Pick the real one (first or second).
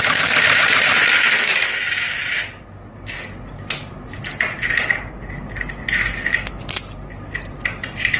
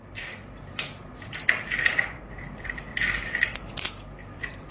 first